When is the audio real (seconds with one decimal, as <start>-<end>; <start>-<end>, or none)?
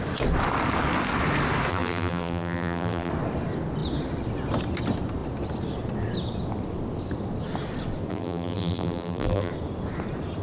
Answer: 0.0-1.7; 3.1-8.1; 9.5-10.4